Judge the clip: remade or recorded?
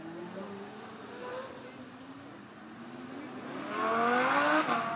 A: recorded